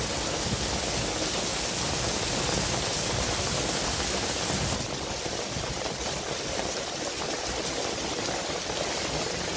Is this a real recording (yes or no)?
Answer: yes